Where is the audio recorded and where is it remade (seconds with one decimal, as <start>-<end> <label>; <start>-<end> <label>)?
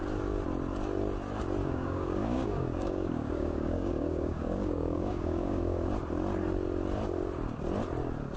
0.0-1.6 recorded; 1.6-5.9 remade; 5.9-8.4 recorded